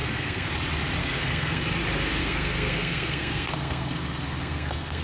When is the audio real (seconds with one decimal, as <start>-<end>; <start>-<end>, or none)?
0.5-1.0; 1.6-2.2